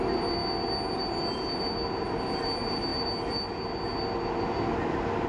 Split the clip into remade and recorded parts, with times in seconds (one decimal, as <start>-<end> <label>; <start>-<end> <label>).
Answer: 0.0-5.3 recorded